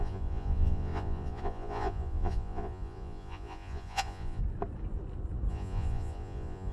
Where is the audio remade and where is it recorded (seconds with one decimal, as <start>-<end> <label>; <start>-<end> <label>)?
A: 0.0-4.4 remade; 4.4-5.5 recorded; 5.5-6.7 remade